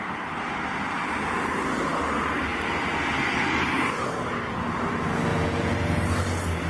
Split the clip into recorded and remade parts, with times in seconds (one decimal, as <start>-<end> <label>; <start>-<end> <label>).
0.0-5.3 recorded; 5.3-6.0 remade; 6.0-6.7 recorded